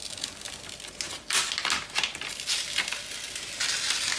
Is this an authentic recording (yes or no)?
yes